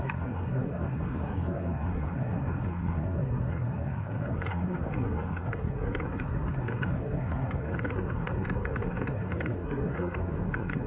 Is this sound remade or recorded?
remade